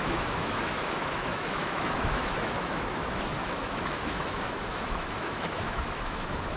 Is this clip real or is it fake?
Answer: fake